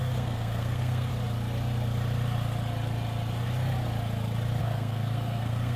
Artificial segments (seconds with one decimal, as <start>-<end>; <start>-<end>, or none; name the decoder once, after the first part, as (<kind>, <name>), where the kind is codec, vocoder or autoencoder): 0.0-1.1 (codec, SNAC); 4.6-5.8